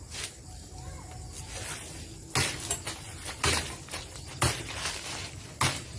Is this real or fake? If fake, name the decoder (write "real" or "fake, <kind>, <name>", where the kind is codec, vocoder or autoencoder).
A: real